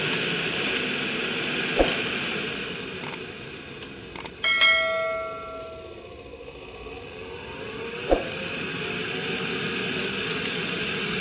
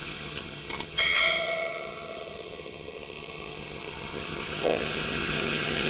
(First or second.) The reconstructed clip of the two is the second